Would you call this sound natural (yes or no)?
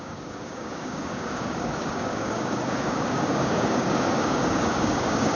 no